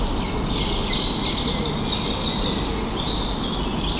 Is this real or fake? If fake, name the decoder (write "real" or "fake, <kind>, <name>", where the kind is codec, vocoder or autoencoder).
real